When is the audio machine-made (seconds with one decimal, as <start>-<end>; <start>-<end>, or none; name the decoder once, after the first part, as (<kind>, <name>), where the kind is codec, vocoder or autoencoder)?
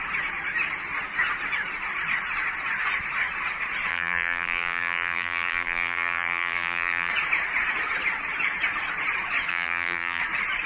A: 3.9-7.1 (vocoder, BigVGAN v2); 9.5-10.2